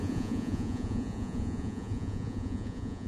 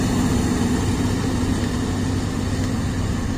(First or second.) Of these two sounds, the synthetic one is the first